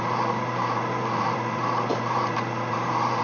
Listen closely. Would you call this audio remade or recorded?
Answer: remade